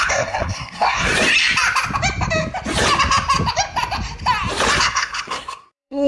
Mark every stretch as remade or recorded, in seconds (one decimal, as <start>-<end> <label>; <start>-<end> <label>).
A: 0.0-1.1 remade; 1.1-4.8 recorded; 4.8-6.1 remade

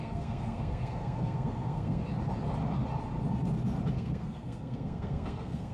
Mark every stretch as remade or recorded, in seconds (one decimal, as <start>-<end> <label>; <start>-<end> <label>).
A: 0.0-2.0 remade; 2.0-3.9 recorded; 3.9-5.7 remade

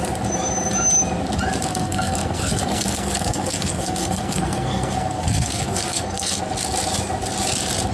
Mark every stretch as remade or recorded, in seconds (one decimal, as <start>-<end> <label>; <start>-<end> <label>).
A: 0.0-1.7 recorded; 1.7-6.4 remade; 6.4-7.9 recorded

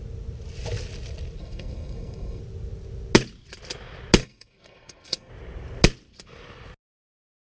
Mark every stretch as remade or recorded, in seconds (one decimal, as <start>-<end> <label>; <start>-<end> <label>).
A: 0.0-1.4 recorded; 1.4-2.4 remade; 2.4-4.2 recorded; 4.2-5.3 remade; 5.3-7.4 recorded

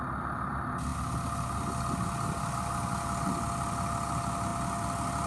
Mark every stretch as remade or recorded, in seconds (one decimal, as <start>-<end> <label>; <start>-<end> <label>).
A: 0.0-5.3 recorded

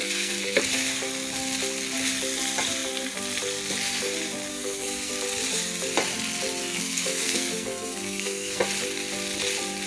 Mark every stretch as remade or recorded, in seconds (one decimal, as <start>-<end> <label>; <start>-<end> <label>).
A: 0.0-0.6 remade; 0.6-4.5 recorded; 4.5-5.1 remade; 5.1-6.6 recorded; 6.6-8.6 remade; 8.6-9.9 recorded

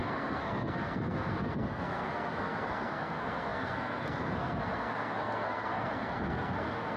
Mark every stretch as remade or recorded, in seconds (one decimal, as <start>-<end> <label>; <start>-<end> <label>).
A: 0.0-7.0 remade